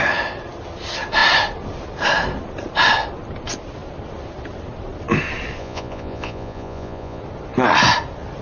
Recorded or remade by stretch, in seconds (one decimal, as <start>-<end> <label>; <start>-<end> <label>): 0.0-5.6 recorded; 5.6-7.2 remade; 7.2-8.4 recorded